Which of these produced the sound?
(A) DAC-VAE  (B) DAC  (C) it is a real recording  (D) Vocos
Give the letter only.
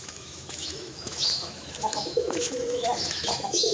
A